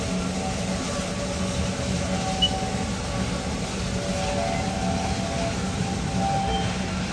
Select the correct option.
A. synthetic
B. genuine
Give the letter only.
B